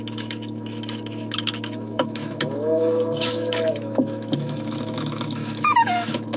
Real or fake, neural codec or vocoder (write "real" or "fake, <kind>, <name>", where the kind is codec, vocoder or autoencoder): fake, autoencoder, DAC-VAE